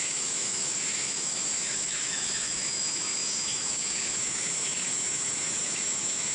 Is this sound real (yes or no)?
no